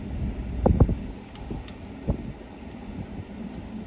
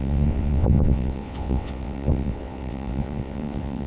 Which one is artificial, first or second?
second